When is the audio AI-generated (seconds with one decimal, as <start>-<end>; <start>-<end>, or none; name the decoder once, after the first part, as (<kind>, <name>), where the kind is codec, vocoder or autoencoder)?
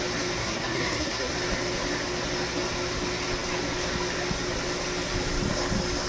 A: 0.4-1.3 (codec, SNAC)